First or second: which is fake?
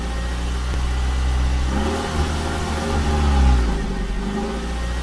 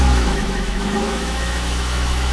second